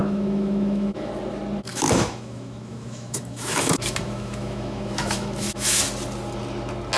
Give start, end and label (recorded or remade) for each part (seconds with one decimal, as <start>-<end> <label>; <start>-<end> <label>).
0.0-1.1 remade; 1.1-1.7 recorded; 1.7-5.8 remade; 5.8-7.0 recorded